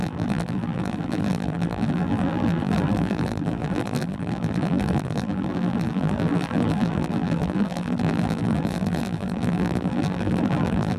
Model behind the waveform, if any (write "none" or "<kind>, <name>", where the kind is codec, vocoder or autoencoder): vocoder, BigVGAN v2